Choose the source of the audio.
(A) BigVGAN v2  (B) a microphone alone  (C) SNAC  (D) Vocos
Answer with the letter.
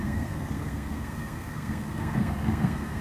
C